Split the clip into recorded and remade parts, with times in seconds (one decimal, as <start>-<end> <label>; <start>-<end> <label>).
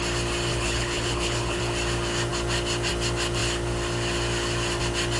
0.0-0.5 recorded; 0.5-1.6 remade; 1.6-5.2 recorded